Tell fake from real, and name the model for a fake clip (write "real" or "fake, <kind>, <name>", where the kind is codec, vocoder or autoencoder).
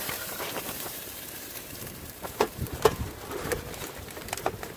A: fake, vocoder, BigVGAN v2